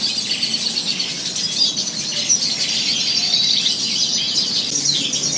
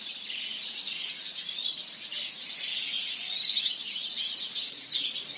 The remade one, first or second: second